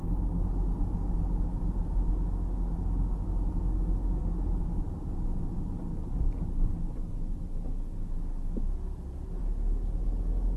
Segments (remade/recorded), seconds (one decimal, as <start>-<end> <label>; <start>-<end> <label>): 0.0-10.6 recorded